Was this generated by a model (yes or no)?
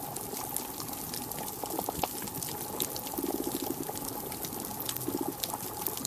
no